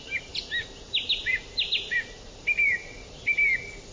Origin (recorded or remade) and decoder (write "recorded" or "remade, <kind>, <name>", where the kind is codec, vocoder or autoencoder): recorded